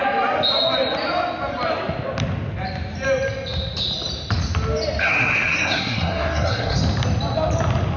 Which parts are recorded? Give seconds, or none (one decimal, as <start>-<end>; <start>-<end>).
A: 0.0-5.0; 6.8-8.0